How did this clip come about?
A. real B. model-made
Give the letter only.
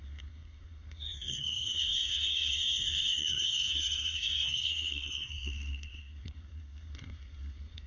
B